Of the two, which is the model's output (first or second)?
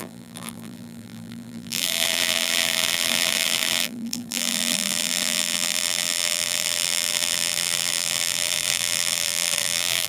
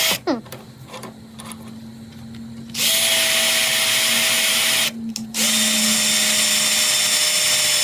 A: first